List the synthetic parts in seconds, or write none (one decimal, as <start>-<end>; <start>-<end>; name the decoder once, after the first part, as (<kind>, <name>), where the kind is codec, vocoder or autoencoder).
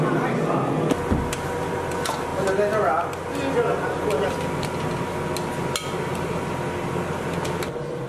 none